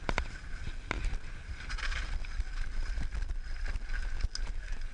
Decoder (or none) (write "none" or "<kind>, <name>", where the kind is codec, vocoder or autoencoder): none